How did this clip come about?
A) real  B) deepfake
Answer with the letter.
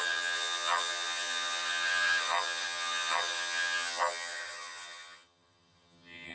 B